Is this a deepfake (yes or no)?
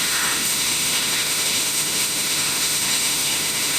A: yes